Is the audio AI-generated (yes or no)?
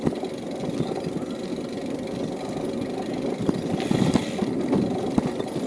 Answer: no